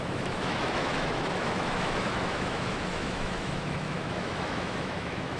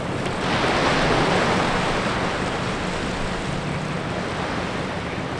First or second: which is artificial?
first